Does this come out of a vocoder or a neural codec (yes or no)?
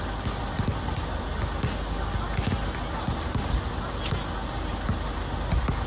no